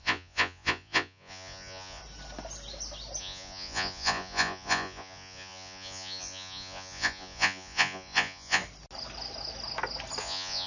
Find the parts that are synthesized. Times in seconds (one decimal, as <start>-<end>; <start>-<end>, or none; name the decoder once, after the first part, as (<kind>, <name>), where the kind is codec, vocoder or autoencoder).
0.0-2.0 (vocoder, Vocos); 3.2-8.6; 10.2-10.7